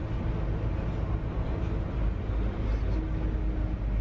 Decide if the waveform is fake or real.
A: real